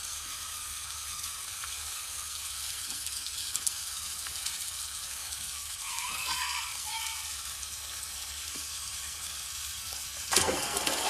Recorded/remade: remade